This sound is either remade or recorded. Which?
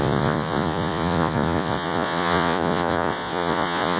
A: remade